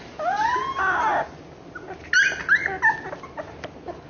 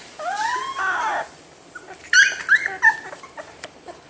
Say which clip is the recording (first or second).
first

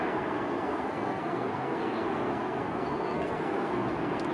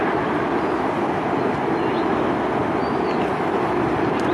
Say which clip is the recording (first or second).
second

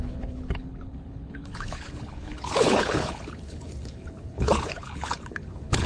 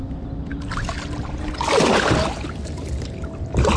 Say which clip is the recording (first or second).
second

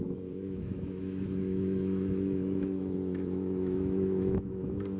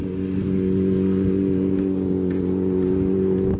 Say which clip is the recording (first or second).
second